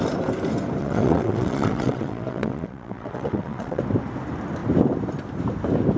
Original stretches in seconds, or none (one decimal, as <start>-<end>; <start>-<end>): 0.0-0.8; 3.8-6.0